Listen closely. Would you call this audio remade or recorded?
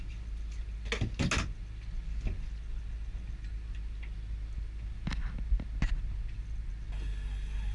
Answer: recorded